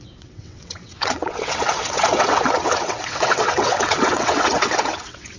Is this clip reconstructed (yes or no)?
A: yes